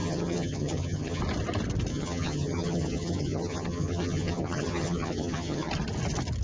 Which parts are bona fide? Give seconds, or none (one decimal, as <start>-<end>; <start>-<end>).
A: 1.2-1.9; 5.7-6.4